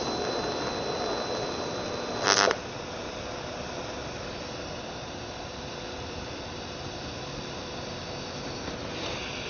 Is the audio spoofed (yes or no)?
no